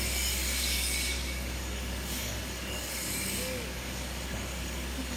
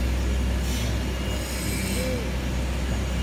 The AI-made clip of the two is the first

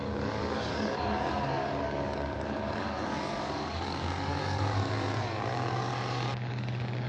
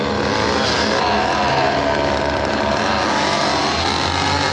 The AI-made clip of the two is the first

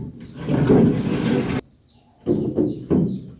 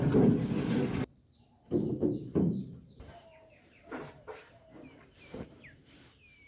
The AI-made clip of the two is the second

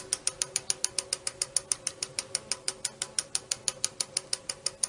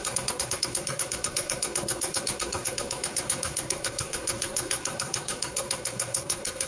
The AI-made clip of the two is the second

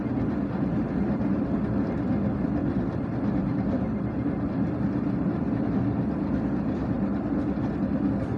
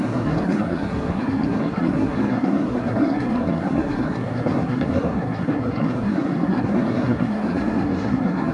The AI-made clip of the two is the second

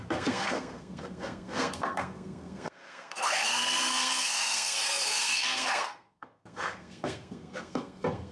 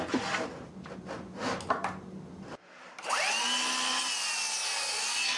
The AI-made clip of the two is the first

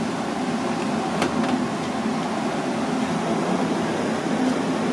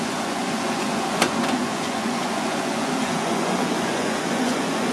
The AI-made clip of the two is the second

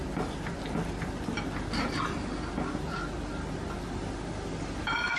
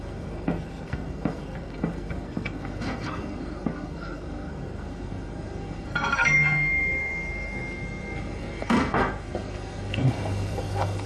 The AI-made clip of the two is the second